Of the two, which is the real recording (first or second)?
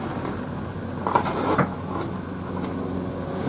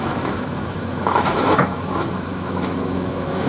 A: first